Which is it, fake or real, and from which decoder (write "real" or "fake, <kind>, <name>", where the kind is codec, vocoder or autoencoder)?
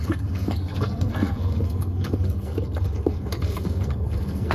fake, codec, SNAC